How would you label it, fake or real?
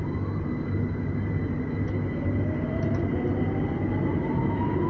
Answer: real